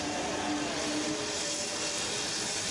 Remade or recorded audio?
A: recorded